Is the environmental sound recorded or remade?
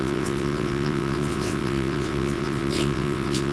remade